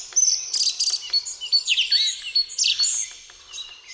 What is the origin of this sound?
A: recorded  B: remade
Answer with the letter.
A